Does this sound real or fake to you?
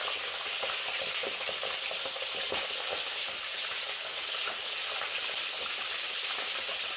real